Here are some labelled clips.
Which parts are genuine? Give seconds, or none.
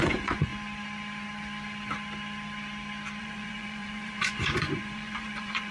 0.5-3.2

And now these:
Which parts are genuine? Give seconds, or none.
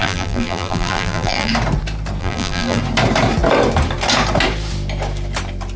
1.5-2.2; 2.8-5.8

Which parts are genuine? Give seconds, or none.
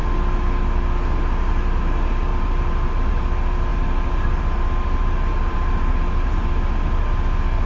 0.0-2.3; 3.1-3.7; 6.5-7.7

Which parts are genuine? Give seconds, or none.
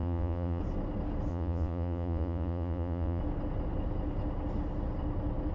0.6-1.3; 3.2-5.5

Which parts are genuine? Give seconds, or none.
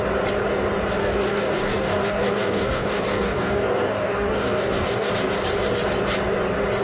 0.0-1.0; 5.1-6.8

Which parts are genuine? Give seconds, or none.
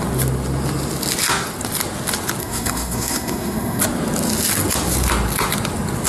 0.0-2.4; 3.8-6.1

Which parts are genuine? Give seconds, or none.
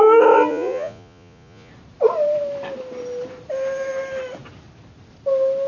0.0-0.5; 1.7-5.7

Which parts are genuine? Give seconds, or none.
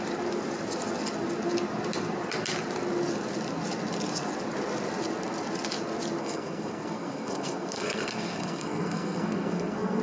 0.0-6.2